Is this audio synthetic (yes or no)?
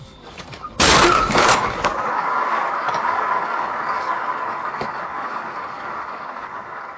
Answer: yes